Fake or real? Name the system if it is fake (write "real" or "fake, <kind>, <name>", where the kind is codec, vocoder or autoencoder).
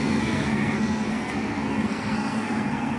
fake, codec, SNAC